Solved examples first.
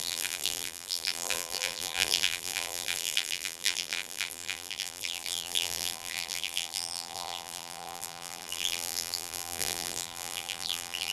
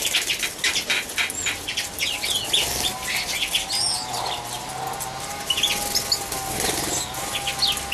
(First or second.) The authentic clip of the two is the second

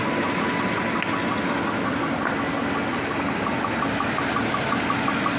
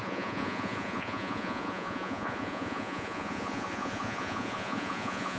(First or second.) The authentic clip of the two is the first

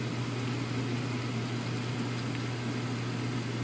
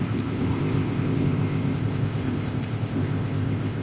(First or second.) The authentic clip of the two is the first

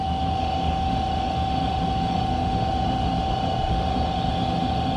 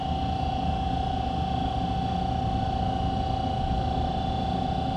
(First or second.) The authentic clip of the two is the second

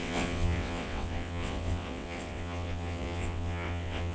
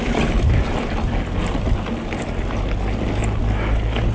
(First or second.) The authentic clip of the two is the second